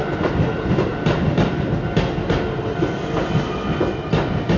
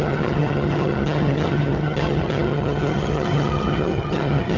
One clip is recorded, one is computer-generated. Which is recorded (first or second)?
first